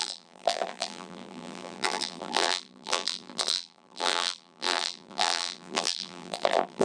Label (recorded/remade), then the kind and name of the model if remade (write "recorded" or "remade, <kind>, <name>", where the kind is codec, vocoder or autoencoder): remade, vocoder, BigVGAN v2